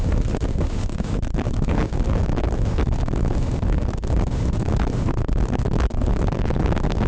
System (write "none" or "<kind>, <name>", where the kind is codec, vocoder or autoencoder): autoencoder, DAC-VAE